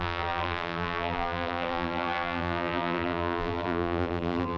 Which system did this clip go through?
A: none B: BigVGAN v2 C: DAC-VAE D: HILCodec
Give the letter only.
B